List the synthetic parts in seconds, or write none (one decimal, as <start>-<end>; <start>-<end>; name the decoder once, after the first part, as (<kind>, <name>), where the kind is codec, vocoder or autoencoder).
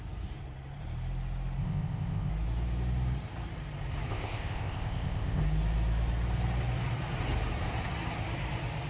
1.6-2.3 (codec, ZipCodec); 4.1-5.4